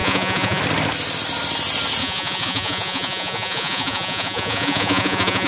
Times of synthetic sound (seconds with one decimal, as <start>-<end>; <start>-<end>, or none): 0.0-0.6; 2.0-5.5